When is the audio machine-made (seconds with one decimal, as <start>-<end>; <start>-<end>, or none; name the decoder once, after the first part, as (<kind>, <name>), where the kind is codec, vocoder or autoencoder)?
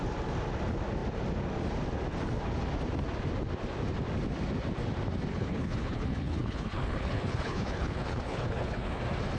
5.3-9.0 (codec, HILCodec)